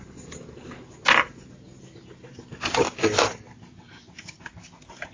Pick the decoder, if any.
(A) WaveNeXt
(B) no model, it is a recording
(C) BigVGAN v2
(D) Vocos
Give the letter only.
B